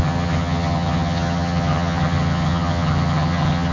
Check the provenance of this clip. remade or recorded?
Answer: remade